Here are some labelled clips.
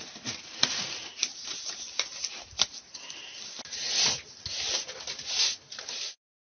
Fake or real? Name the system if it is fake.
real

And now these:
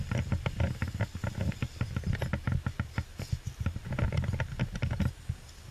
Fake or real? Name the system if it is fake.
real